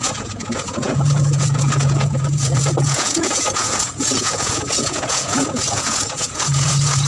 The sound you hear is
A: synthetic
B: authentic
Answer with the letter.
A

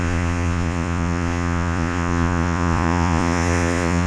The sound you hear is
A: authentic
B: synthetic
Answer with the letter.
B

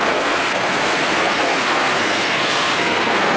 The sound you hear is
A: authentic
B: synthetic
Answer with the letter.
B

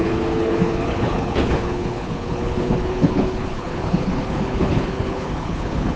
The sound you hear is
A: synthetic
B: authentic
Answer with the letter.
A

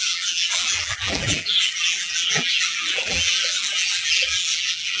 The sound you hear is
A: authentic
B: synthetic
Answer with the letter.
B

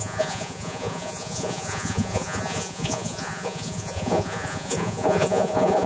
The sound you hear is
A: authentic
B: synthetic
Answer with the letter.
B